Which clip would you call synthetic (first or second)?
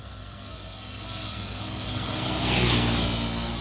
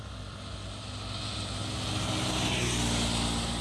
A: first